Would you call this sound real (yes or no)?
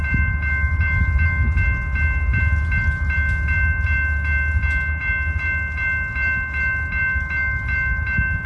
yes